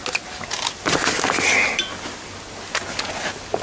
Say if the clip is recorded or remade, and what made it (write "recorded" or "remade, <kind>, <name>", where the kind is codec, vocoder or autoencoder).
recorded